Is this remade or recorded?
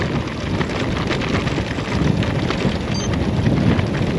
recorded